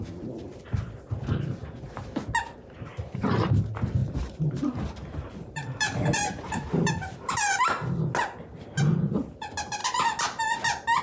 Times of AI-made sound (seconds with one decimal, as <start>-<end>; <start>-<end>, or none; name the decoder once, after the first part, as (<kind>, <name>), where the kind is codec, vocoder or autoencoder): 2.9-3.6 (vocoder, BigVGAN v2); 4.0-7.6